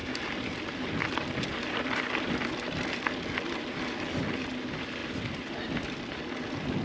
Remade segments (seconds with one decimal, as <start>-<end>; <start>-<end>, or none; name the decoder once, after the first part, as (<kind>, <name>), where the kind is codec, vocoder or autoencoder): 0.0-2.5 (vocoder, BigVGAN v2)